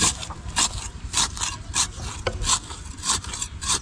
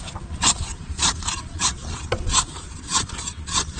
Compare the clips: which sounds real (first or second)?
first